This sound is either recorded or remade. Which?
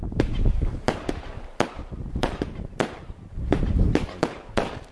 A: remade